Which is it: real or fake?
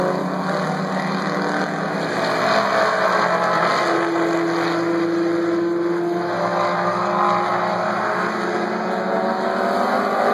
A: real